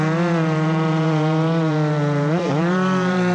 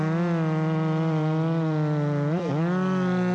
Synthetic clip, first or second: first